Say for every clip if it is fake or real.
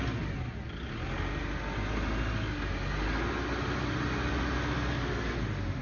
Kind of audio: real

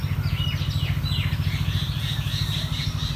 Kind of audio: real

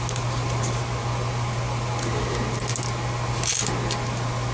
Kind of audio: real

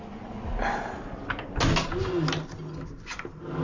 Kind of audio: real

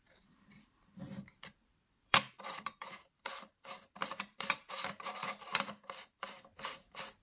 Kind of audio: fake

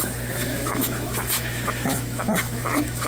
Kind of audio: fake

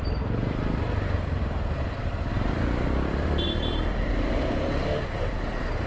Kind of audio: fake